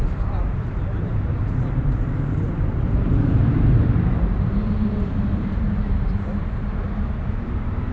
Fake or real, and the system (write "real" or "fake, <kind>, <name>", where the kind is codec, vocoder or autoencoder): fake, vocoder, BigVGAN v2